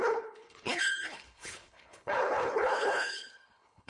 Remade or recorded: remade